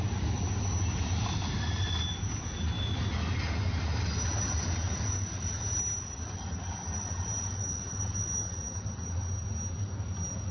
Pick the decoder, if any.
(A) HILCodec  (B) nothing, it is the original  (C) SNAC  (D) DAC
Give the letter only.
B